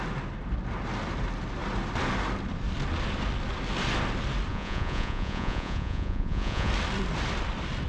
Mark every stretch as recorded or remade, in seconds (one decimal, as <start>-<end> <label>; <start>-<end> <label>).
0.0-4.5 recorded; 4.5-6.7 remade; 6.7-7.9 recorded